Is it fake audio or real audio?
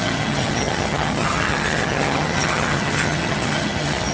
fake